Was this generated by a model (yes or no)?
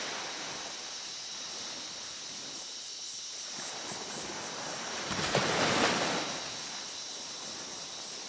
no